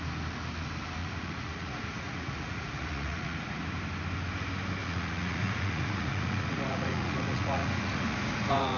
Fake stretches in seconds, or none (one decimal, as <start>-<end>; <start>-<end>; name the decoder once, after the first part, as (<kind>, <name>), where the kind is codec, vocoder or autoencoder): 1.0-3.6 (vocoder, Vocos); 4.8-8.8